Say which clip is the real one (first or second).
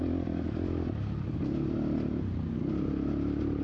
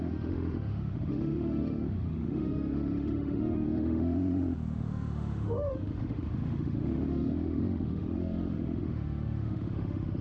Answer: first